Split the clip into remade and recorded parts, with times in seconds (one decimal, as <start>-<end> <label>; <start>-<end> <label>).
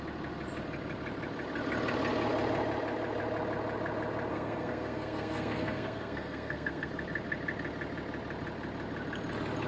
0.0-4.3 recorded; 4.3-6.9 remade; 6.9-9.7 recorded